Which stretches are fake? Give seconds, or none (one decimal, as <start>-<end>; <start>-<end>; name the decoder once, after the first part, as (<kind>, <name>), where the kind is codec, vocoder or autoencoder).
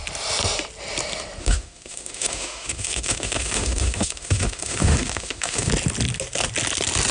1.4-5.7 (autoencoder, DAC-VAE)